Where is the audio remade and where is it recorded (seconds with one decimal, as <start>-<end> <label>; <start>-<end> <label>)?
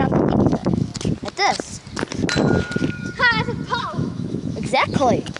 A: 0.0-0.9 remade; 0.9-3.8 recorded; 3.8-5.4 remade